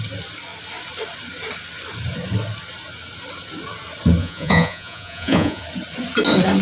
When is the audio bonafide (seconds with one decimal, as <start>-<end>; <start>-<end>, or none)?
0.0-4.2; 5.6-6.6